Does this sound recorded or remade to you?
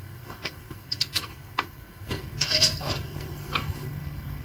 remade